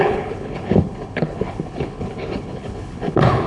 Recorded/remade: remade